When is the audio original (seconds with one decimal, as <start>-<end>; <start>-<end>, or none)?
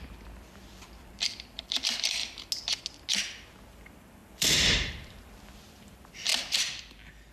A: 2.2-3.5; 6.3-6.8